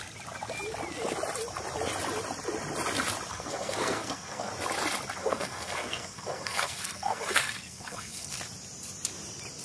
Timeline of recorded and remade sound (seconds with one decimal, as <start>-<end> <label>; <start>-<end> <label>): 0.0-3.3 recorded; 3.3-4.5 remade; 4.5-5.2 recorded; 5.2-8.4 remade; 8.4-9.6 recorded